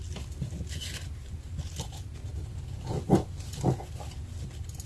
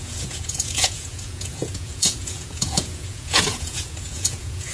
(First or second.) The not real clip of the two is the second